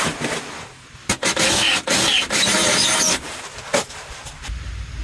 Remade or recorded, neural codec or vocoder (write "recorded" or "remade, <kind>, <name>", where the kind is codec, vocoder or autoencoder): recorded